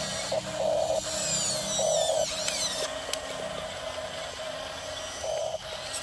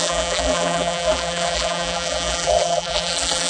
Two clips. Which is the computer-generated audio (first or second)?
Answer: second